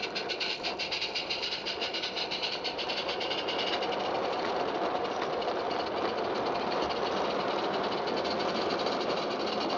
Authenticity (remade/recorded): recorded